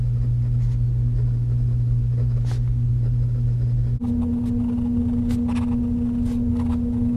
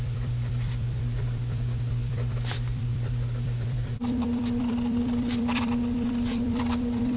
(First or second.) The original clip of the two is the first